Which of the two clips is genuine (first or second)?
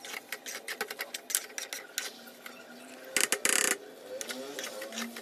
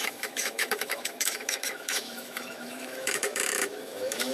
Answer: first